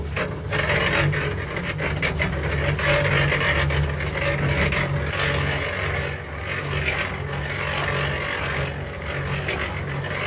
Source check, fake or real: real